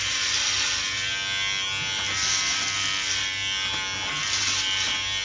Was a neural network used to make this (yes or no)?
no